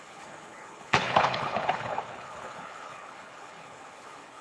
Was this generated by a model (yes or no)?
yes